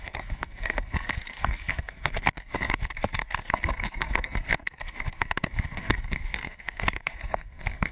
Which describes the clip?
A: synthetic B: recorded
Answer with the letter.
A